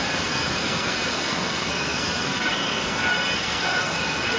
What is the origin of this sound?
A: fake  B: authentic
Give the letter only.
A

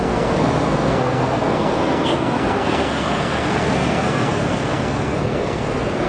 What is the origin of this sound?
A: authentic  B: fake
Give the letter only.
B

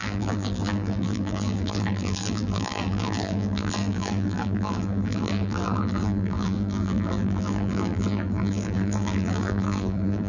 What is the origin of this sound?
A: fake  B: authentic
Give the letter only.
A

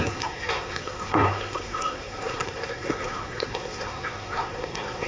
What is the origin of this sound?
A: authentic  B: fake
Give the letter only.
B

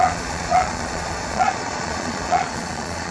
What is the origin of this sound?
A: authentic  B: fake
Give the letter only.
B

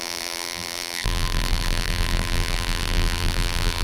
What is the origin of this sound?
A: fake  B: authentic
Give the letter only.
A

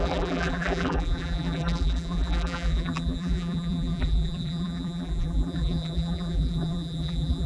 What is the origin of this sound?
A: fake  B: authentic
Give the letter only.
A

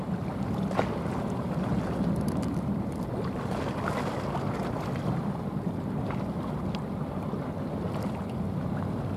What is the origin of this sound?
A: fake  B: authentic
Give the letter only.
B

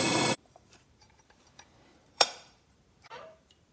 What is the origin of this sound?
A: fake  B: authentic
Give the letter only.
A